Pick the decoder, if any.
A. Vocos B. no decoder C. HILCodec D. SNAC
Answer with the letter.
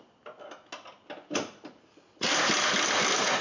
B